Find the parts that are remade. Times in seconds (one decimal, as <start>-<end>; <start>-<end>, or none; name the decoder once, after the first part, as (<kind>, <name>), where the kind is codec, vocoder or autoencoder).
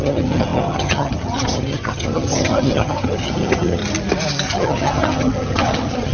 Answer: 0.0-3.8 (vocoder, HiFi-GAN); 4.5-6.1